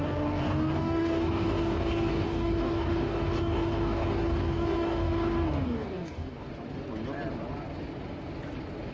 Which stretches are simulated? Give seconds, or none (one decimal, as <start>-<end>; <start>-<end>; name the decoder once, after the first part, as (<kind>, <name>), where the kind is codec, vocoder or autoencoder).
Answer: 0.0-6.5 (codec, DAC)